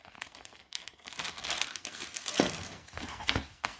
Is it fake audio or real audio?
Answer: fake